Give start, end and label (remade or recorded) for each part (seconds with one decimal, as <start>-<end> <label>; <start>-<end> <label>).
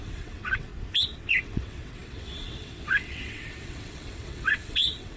0.0-0.7 remade; 0.7-1.4 recorded; 1.4-5.2 remade